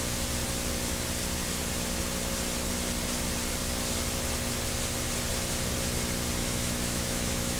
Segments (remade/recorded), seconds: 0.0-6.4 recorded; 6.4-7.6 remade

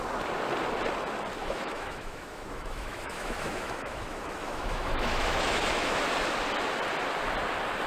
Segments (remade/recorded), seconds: 0.0-1.4 recorded; 1.4-6.1 remade; 6.1-7.9 recorded

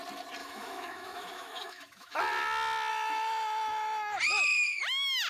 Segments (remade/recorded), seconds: 0.0-0.4 recorded; 0.4-2.2 remade; 2.2-2.9 recorded; 2.9-4.2 remade; 4.2-5.3 recorded

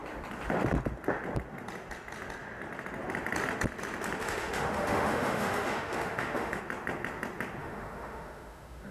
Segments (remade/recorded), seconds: 0.0-4.2 recorded; 4.2-6.6 remade; 6.6-7.6 recorded; 7.6-8.9 remade

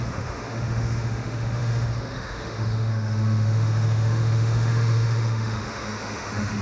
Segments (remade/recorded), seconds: 0.0-6.6 remade

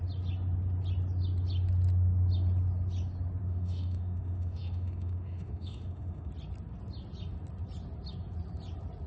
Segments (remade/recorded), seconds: 0.0-3.4 recorded; 3.4-6.3 remade; 6.3-9.1 recorded

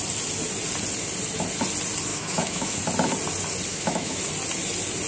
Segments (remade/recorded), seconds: 0.0-2.1 recorded; 2.1-2.8 remade; 2.8-3.7 recorded; 3.7-4.2 remade; 4.2-5.1 recorded